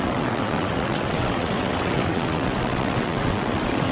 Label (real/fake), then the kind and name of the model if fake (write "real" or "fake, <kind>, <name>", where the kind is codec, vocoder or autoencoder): fake, vocoder, WaveNeXt